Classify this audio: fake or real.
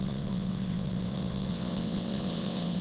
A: fake